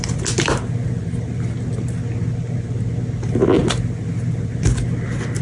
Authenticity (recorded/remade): recorded